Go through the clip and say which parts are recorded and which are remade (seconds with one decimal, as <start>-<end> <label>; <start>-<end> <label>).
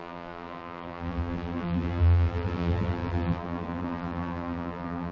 0.0-5.1 remade